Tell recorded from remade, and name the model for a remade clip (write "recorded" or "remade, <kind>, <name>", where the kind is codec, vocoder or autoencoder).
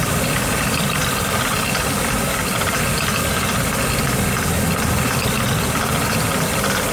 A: recorded